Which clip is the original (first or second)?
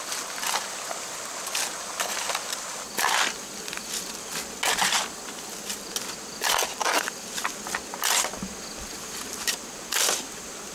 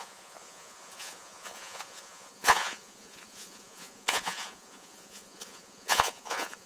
first